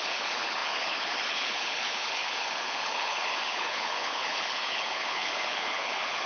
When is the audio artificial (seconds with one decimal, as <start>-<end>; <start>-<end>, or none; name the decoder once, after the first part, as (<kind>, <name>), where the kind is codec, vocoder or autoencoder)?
0.0-6.3 (codec, HILCodec)